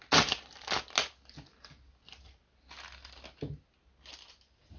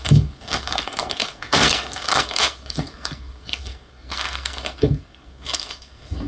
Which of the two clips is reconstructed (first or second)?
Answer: second